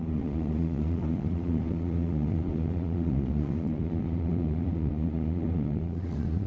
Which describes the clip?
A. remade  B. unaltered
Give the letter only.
A